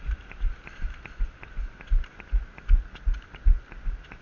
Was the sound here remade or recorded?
recorded